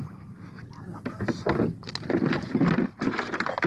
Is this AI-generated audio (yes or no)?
no